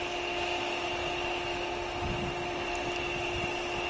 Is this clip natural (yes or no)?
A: yes